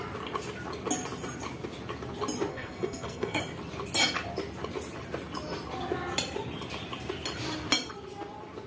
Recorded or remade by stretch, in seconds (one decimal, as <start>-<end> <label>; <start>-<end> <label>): 0.0-2.5 recorded; 2.5-3.4 remade; 3.4-8.7 recorded